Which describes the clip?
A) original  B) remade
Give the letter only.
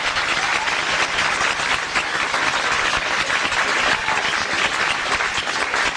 A